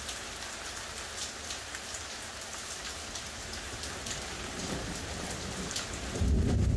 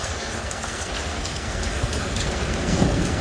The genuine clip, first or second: first